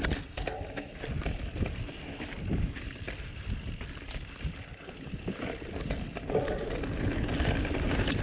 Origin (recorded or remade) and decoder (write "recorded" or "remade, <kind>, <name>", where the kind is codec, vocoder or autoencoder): recorded